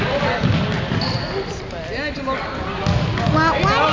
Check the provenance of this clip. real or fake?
real